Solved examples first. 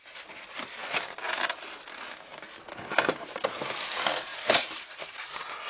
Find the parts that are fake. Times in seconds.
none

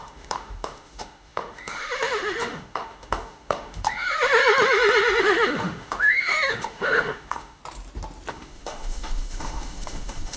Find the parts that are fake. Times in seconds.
0.0-4.4; 5.2-7.6; 8.3-10.4

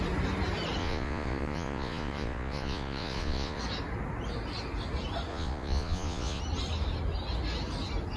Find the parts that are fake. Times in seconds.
0.8-3.6; 5.3-6.4